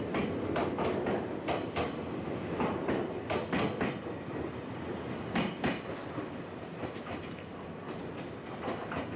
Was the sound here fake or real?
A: real